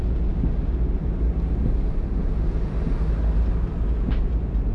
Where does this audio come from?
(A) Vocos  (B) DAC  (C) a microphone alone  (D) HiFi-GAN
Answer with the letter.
C